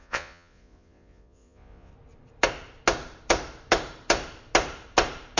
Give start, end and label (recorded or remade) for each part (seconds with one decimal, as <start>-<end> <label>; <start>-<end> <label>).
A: 0.0-1.9 remade; 1.9-5.4 recorded